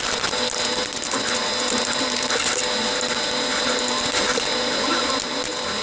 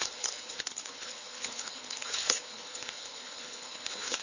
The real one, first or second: first